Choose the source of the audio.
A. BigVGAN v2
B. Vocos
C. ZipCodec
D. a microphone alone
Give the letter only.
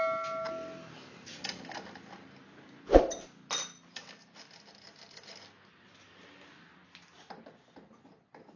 D